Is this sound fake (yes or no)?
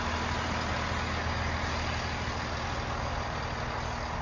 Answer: no